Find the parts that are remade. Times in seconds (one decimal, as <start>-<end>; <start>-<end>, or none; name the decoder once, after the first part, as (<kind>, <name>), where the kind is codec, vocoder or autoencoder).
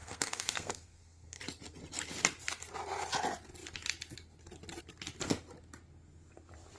0.0-1.4 (codec, SNAC)